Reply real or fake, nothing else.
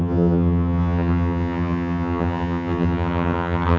fake